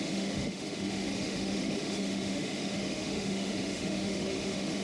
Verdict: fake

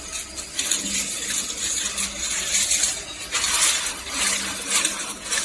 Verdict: real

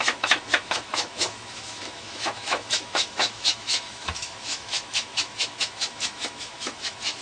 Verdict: fake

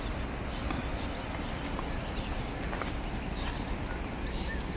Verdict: real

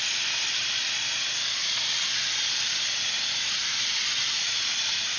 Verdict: real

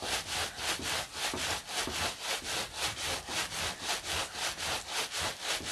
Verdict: real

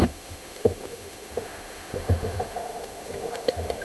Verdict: fake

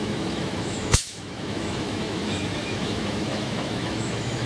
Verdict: fake